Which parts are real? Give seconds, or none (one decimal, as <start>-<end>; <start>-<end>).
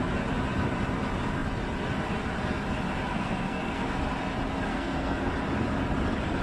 0.0-3.1; 4.0-4.7; 5.3-6.4